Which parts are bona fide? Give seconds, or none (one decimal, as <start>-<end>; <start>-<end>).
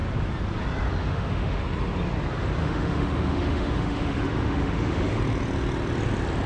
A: 0.0-1.0; 1.6-2.6; 5.2-6.5